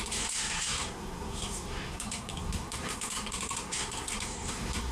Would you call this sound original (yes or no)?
no